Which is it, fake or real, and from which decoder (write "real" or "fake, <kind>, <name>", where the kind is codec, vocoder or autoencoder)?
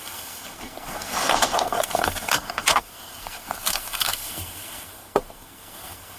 fake, codec, SNAC